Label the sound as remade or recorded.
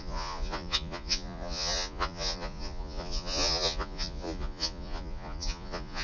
remade